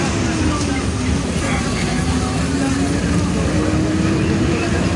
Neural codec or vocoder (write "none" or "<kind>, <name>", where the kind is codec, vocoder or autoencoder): none